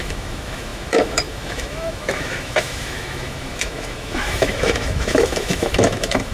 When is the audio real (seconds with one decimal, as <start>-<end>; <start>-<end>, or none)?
none